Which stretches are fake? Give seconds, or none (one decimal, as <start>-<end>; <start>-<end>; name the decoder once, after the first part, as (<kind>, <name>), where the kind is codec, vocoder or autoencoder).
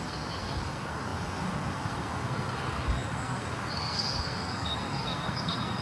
0.0-5.8 (codec, SNAC)